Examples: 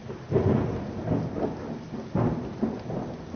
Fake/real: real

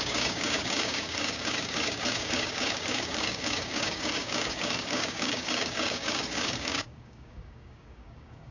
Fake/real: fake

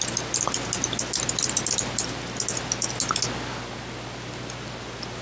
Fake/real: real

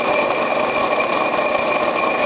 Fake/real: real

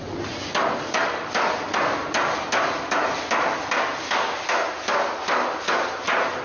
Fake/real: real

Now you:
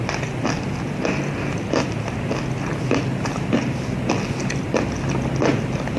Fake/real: real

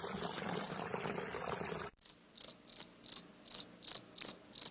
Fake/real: real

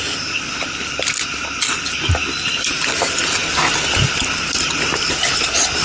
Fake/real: real